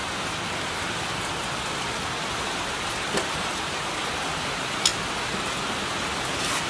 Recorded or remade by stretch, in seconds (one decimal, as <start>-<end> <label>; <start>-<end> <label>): 0.0-6.7 recorded